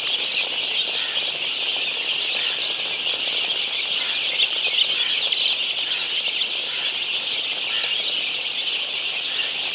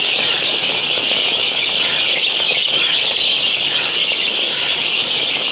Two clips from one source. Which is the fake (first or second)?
second